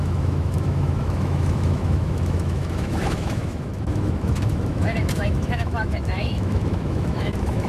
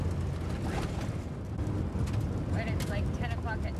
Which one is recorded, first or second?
second